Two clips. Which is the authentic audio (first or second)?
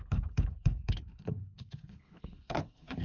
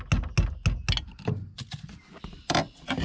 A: second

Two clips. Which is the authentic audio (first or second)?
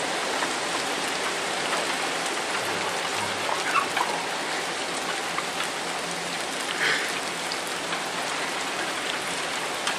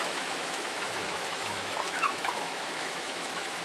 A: first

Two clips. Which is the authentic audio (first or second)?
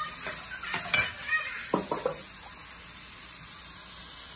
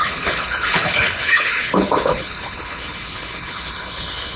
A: first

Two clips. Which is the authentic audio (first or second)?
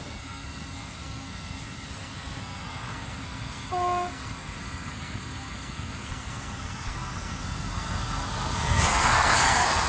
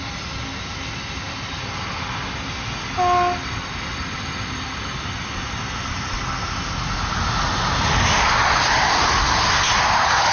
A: second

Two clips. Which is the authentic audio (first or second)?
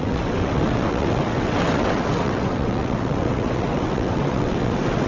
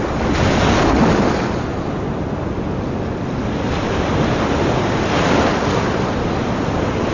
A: second